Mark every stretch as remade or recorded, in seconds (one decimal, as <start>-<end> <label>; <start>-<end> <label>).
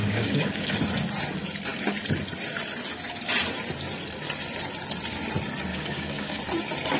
0.0-0.8 remade; 0.8-5.7 recorded; 5.7-6.4 remade; 6.4-7.0 recorded